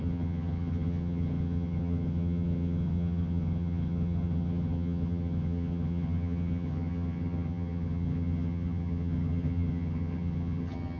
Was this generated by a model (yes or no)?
yes